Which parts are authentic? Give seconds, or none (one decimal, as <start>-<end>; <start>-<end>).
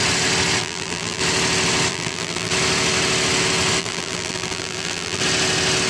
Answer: 0.0-0.6; 1.2-1.9; 2.5-3.8; 5.2-5.9